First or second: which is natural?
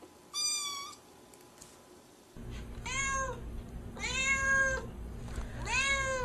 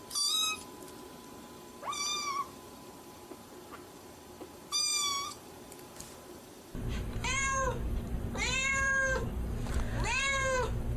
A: first